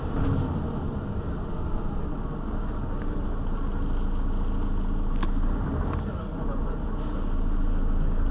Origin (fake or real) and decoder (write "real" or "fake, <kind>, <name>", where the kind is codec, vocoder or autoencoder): real